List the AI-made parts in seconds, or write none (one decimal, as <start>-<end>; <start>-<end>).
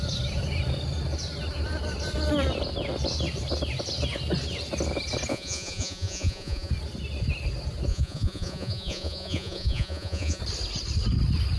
5.3-6.7; 7.9-10.4